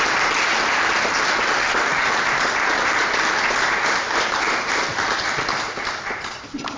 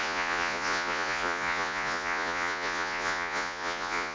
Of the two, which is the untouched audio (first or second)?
first